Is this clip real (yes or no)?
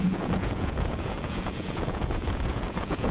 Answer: no